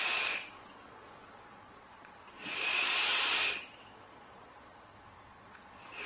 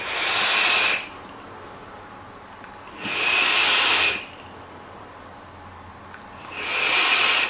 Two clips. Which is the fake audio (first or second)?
first